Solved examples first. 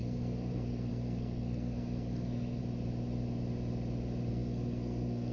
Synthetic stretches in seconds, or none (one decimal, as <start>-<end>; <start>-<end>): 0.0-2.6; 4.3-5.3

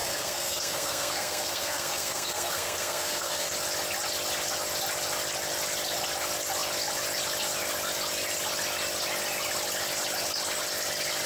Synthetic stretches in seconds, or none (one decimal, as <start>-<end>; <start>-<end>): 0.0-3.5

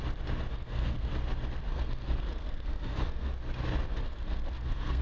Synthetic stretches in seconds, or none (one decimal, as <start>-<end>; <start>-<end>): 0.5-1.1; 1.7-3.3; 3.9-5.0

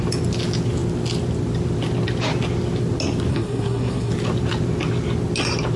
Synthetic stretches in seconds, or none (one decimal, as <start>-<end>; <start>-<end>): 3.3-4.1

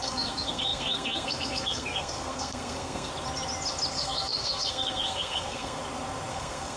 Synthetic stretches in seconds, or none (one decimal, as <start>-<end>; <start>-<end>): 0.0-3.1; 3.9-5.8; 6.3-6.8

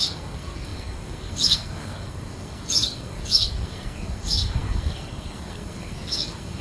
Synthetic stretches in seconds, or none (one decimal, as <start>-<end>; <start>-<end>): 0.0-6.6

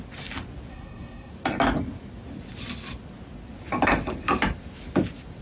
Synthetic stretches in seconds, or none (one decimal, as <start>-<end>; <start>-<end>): 0.7-1.3